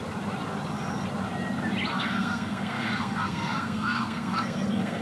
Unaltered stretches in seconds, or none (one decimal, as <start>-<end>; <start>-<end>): 0.0-1.9